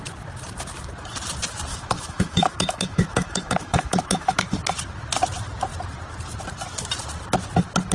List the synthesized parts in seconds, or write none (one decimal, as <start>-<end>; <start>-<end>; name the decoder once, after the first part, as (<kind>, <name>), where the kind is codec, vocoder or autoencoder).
1.7-4.4 (autoencoder, DAC-VAE)